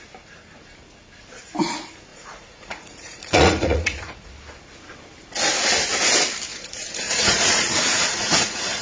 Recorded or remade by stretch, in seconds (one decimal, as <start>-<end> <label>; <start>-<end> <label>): 0.0-2.1 recorded; 2.1-4.3 remade; 4.3-6.5 recorded; 6.5-8.8 remade